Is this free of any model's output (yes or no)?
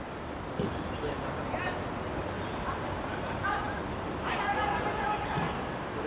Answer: yes